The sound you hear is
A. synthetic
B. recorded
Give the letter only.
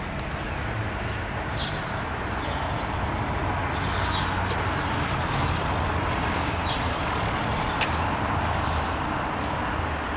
B